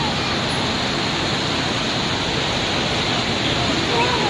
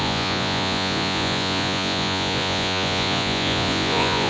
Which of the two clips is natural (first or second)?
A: first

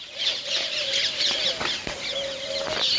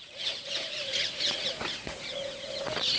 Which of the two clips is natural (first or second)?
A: first